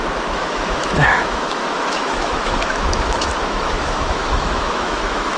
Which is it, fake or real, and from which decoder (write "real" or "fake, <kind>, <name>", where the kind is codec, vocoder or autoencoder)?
fake, autoencoder, DAC-VAE